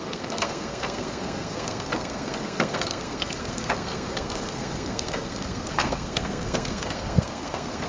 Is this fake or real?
fake